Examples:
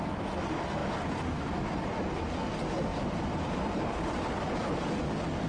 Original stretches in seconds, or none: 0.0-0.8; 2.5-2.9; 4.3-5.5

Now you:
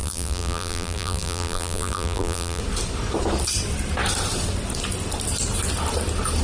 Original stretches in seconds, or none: 2.6-6.4

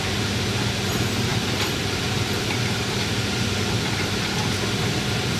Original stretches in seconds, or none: 0.0-1.3; 4.5-5.4

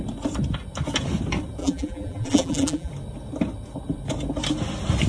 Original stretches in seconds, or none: 0.0-1.6; 2.9-5.1

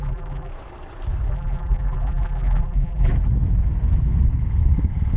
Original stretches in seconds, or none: 0.5-1.3; 3.1-5.2

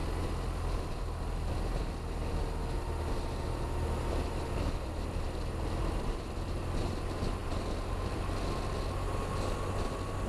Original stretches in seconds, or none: 0.0-10.3

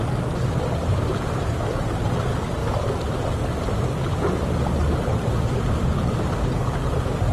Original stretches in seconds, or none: 0.0-7.3